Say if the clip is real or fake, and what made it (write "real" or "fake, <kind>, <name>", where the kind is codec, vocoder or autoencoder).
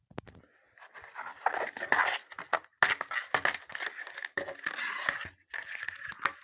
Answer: real